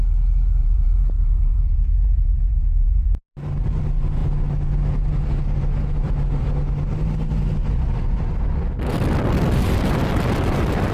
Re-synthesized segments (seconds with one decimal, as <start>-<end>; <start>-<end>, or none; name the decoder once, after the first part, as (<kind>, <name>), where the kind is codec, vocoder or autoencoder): 0.6-3.8 (vocoder, BigVGAN v2)